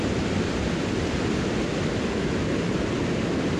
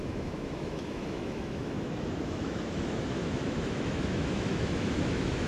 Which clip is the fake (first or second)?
second